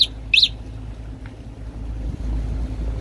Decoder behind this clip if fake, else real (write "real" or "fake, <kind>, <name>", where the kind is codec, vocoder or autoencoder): real